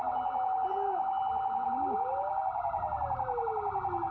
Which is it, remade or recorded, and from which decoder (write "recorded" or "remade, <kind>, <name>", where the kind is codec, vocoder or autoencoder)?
recorded